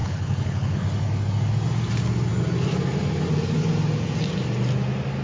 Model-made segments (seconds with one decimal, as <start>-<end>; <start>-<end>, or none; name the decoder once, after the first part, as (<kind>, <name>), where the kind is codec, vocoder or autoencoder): 0.0-0.8 (codec, HILCodec)